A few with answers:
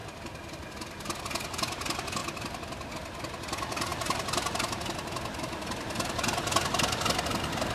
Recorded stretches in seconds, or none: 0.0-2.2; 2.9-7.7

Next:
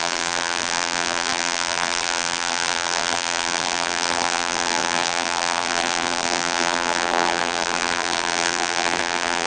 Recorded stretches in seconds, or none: none

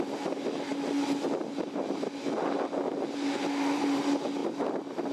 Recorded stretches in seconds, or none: 0.0-5.1

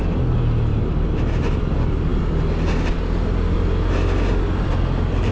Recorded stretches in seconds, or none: 0.0-0.7; 1.6-5.3

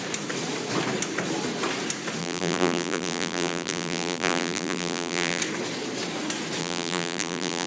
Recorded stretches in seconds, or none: 0.0-2.2; 5.4-6.6